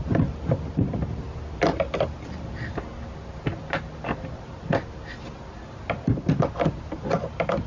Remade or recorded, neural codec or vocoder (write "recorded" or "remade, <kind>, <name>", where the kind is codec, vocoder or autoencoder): recorded